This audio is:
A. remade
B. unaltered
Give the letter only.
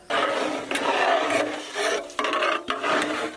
B